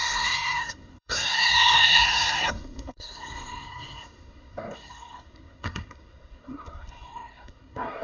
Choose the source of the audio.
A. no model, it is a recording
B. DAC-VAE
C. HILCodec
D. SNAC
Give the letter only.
D